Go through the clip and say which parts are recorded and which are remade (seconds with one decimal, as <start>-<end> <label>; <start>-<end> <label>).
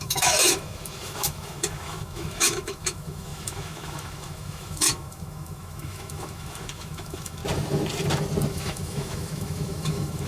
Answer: 0.0-7.4 remade; 7.4-8.5 recorded; 8.5-10.3 remade